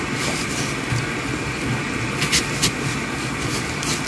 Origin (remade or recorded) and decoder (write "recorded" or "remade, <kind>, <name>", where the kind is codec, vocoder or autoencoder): recorded